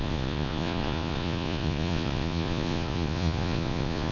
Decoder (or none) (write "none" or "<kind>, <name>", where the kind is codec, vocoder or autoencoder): vocoder, Vocos